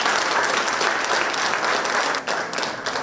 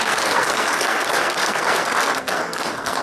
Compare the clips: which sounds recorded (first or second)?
first